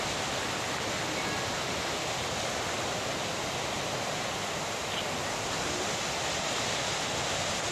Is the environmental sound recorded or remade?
recorded